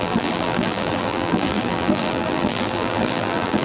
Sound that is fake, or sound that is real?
fake